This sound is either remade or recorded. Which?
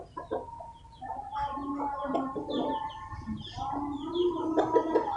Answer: recorded